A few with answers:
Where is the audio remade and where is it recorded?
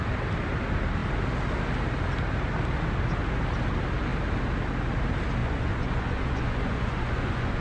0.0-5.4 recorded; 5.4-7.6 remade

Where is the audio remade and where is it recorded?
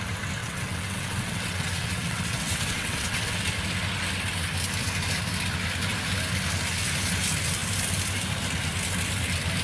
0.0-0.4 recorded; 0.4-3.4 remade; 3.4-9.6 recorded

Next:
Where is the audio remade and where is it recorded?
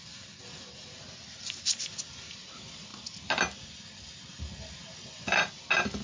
0.0-1.6 remade; 1.6-6.0 recorded